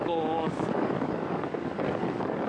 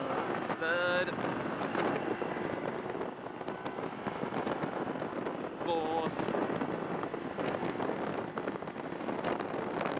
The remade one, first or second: first